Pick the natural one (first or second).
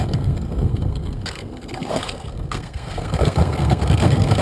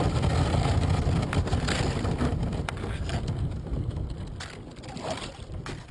second